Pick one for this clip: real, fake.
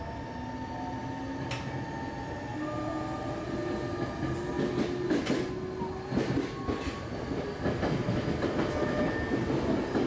real